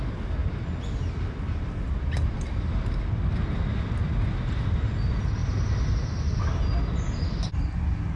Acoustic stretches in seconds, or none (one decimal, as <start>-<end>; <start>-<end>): 0.0-8.2